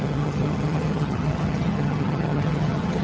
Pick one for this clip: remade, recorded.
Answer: remade